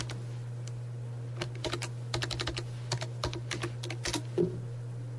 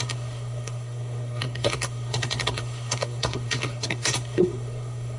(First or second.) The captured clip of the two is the first